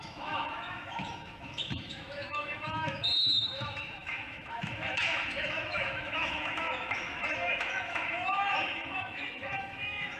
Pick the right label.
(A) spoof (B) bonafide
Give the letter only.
A